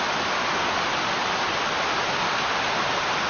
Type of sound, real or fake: real